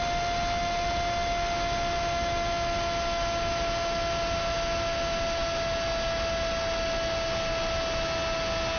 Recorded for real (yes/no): yes